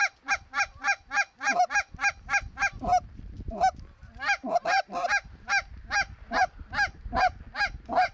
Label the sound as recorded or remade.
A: recorded